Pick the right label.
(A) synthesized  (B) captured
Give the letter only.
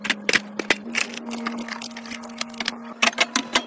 B